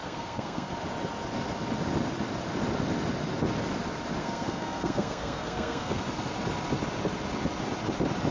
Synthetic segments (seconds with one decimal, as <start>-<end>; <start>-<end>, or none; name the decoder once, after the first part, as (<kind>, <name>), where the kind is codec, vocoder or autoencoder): 0.0-0.7 (codec, SNAC); 4.2-6.0